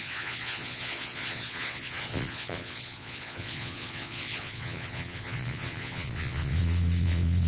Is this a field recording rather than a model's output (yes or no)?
no